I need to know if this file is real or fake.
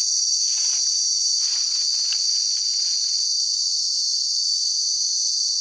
real